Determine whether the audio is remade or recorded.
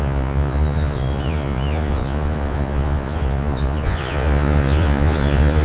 remade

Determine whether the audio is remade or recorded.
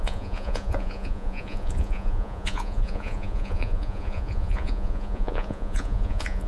remade